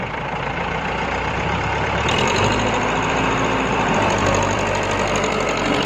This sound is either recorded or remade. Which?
remade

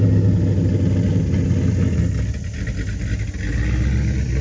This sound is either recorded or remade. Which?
recorded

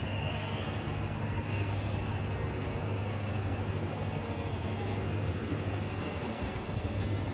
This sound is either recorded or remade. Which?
remade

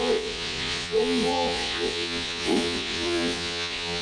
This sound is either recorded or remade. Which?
remade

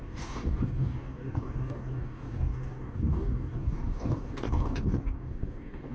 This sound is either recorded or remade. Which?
remade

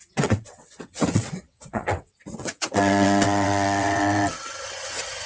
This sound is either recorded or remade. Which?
remade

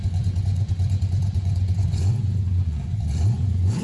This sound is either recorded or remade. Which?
remade